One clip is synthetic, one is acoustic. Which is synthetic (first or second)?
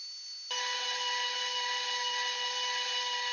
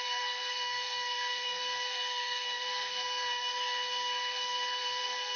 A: second